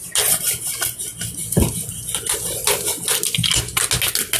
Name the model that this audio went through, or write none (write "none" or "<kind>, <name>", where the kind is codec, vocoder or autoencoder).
none